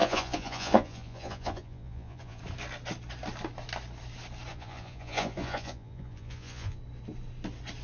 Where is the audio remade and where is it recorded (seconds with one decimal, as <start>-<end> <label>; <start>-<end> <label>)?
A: 0.0-2.4 remade; 2.4-4.5 recorded; 4.5-6.8 remade; 6.8-7.8 recorded